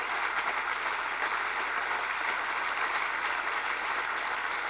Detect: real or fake real